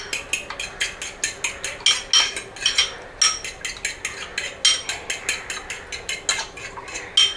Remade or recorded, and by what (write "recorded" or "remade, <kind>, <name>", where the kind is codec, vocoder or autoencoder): recorded